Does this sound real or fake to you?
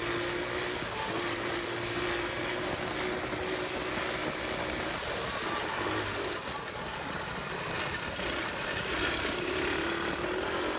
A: real